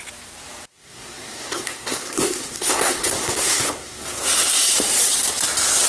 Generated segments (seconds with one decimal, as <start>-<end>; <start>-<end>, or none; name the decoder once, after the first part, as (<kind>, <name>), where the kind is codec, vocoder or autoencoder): 0.7-4.2 (codec, SNAC)